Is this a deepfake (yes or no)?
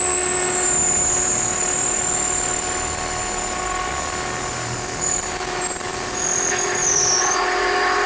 no